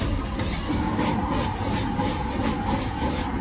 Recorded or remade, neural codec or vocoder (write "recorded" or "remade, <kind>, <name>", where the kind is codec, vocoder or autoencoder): recorded